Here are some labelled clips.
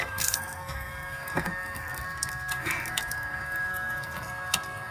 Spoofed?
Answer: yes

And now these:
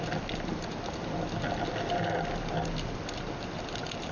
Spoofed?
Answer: no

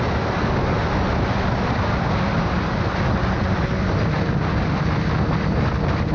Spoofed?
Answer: no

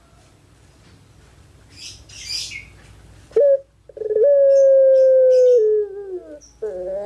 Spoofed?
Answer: no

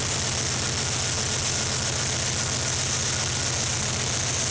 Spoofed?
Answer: no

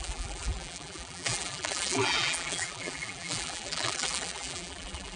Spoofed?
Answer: yes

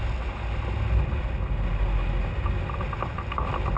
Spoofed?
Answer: no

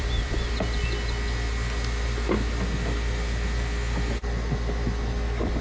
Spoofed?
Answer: no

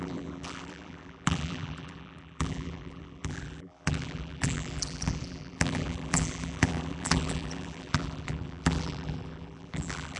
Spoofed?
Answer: yes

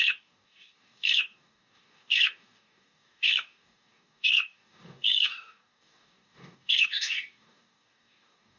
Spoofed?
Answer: yes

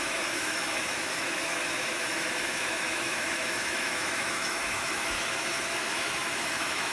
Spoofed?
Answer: yes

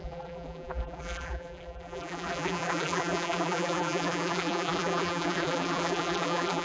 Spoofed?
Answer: yes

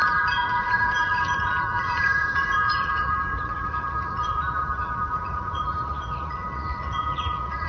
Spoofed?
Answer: yes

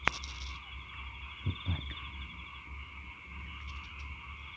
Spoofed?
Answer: no